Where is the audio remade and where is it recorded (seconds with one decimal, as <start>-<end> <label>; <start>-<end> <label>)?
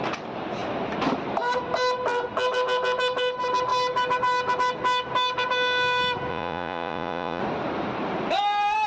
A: 0.0-6.3 recorded; 6.3-7.4 remade; 7.4-8.9 recorded